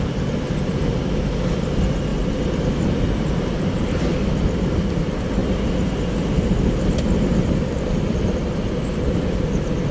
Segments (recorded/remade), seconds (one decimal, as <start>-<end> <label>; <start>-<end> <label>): 0.0-2.1 remade; 2.1-3.7 recorded; 3.7-5.4 remade; 5.4-6.8 recorded; 6.8-9.9 remade